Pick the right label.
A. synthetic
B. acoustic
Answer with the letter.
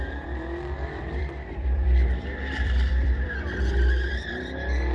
A